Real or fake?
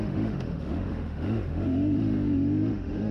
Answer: fake